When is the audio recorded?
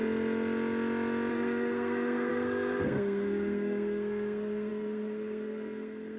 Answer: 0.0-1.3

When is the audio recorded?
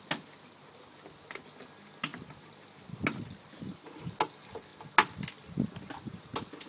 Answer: 0.0-6.7